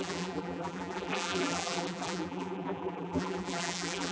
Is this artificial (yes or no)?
yes